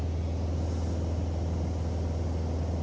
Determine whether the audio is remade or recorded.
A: recorded